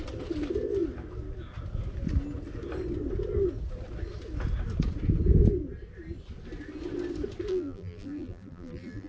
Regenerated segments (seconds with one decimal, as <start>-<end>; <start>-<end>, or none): 7.5-9.1